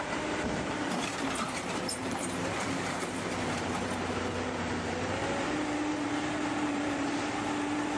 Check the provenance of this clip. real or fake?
fake